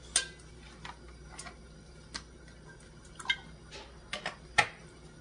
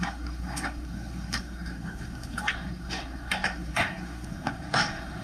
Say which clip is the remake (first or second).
second